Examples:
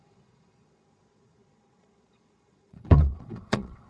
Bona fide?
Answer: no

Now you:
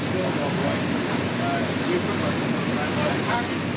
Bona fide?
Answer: yes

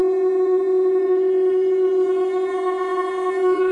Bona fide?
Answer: no